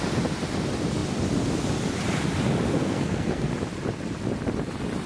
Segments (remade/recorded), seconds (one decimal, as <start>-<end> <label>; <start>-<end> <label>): 0.0-2.7 recorded; 2.7-3.5 remade; 3.5-5.1 recorded